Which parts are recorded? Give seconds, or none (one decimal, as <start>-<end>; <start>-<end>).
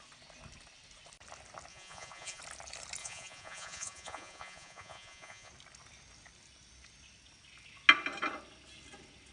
0.0-1.7; 2.4-3.0; 5.5-9.3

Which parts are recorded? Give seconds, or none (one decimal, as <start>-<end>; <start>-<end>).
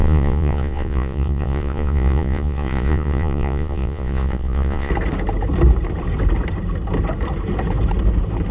4.9-8.5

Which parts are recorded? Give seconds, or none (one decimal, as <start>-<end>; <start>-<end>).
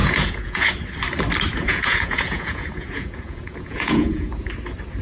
0.7-1.5; 4.5-5.0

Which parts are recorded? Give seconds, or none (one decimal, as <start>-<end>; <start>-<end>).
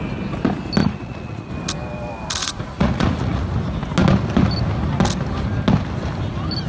0.0-0.8; 1.5-2.4; 3.4-6.7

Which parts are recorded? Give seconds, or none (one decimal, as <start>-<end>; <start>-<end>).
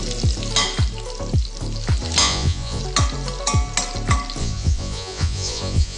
0.0-2.2; 2.8-4.4